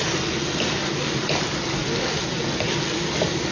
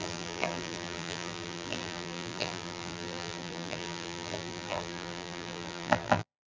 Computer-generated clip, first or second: second